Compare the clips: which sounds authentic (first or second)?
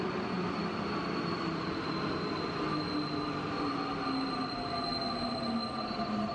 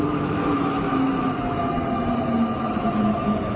first